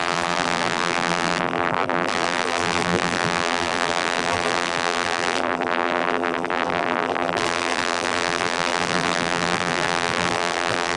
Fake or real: fake